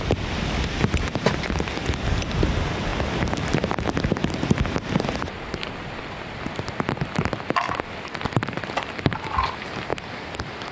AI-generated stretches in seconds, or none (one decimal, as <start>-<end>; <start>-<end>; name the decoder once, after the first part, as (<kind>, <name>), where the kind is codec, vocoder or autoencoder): none